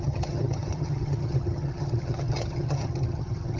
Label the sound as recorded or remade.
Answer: remade